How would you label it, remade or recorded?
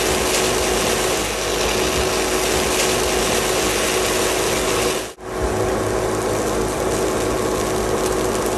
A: recorded